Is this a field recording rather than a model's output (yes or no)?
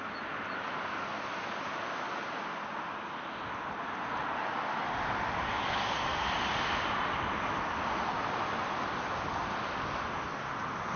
yes